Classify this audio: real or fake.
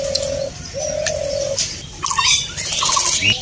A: real